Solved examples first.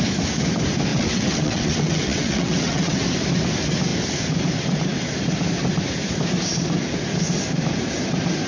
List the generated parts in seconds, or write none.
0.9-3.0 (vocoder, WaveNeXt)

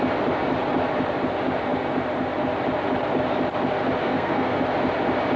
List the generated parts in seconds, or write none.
4.0-4.6 (codec, SNAC)

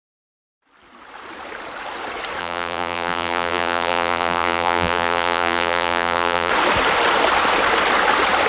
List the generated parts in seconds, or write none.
2.4-6.5 (vocoder, BigVGAN v2)

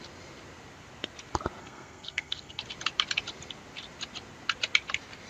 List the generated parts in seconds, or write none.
1.6-2.6 (codec, SNAC)

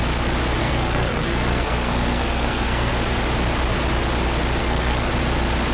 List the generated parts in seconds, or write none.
0.6-2.9 (codec, SNAC); 4.6-5.1

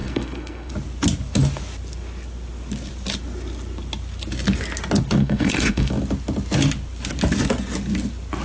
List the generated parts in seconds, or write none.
0.0-0.7 (codec, SNAC); 5.2-5.9

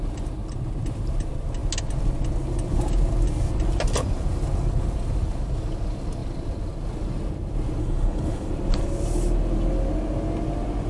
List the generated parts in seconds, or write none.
7.8-8.5 (codec, HILCodec)